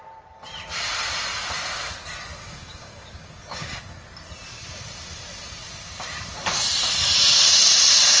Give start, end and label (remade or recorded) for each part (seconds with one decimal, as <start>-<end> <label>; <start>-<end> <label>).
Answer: 0.0-2.4 recorded; 2.4-3.8 remade; 3.8-8.2 recorded